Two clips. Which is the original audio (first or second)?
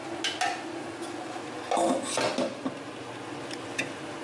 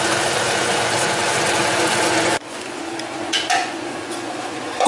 first